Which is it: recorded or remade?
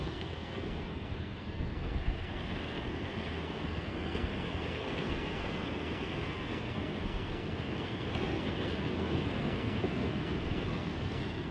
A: remade